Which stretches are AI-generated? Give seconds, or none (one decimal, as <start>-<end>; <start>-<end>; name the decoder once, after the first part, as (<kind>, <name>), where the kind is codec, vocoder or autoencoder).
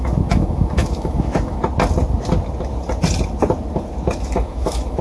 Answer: 0.0-1.6 (autoencoder, DAC-VAE); 4.2-5.0